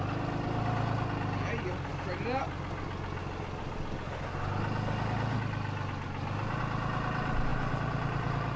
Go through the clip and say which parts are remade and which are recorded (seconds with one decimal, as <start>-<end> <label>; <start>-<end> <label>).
0.0-8.6 recorded